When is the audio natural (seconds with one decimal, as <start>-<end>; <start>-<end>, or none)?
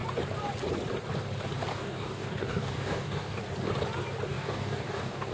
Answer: 0.0-1.7; 3.4-4.3